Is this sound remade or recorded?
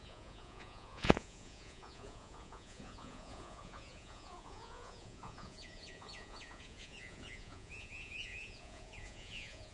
remade